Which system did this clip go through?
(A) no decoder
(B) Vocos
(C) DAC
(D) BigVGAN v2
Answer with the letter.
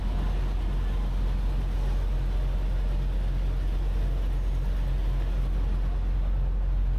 A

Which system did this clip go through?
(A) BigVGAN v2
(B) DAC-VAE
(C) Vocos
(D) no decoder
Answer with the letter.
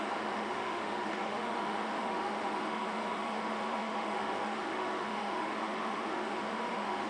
B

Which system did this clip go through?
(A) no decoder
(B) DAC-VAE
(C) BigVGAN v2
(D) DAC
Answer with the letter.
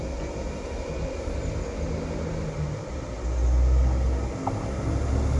A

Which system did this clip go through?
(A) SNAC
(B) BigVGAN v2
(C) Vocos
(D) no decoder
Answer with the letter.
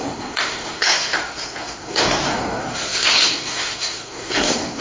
A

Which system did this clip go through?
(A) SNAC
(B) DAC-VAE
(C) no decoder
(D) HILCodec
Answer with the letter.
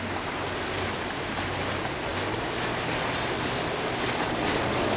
C